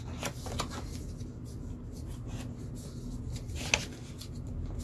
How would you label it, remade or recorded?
recorded